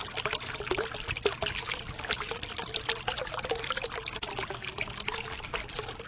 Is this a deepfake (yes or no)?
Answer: no